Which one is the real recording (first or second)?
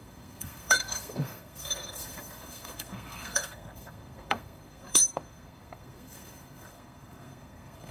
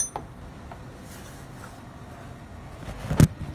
second